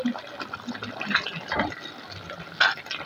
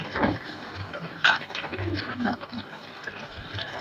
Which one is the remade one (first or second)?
second